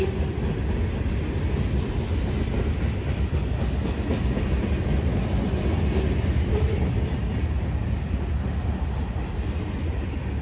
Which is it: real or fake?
real